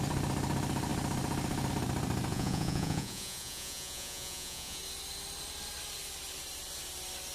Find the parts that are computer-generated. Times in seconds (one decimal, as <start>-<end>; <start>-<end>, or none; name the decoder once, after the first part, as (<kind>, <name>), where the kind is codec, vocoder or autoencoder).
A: 2.3-4.8 (vocoder, Vocos)